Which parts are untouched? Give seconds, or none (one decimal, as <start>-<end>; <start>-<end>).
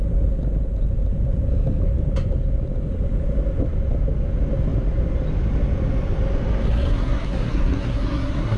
0.0-6.7